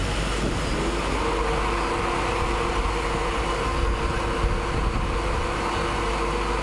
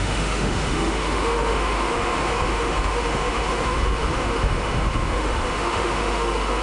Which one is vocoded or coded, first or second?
second